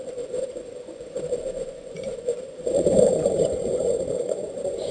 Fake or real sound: fake